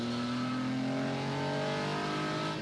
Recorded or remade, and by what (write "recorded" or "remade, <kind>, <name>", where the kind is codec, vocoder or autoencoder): recorded